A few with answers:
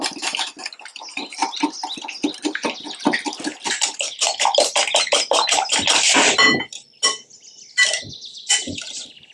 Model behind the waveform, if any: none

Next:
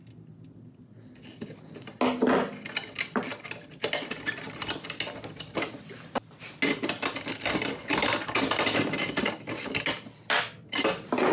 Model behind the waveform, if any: none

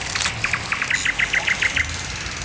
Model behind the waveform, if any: none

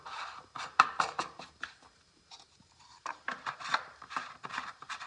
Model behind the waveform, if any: vocoder, BigVGAN v2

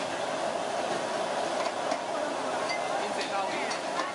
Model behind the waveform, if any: none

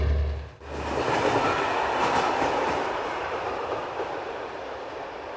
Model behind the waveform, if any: none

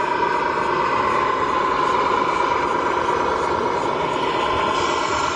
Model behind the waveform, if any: none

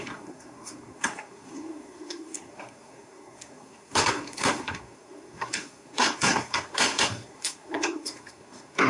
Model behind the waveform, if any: codec, SNAC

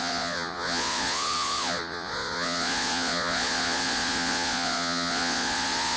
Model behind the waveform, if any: vocoder, Vocos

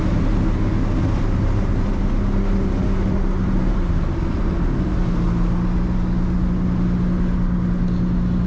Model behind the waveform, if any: none